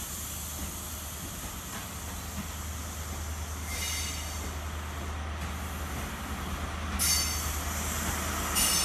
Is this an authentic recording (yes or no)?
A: yes